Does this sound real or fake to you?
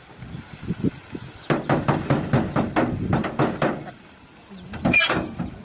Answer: real